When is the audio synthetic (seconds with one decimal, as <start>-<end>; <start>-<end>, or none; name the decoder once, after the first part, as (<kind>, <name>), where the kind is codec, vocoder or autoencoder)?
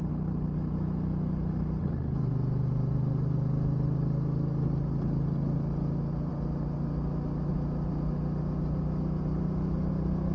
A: none